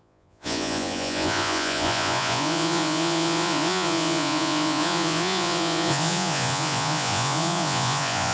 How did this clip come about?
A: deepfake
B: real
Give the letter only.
A